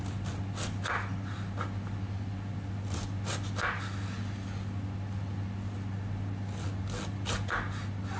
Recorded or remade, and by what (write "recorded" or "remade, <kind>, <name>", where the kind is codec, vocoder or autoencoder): recorded